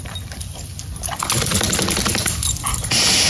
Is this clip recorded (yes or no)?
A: yes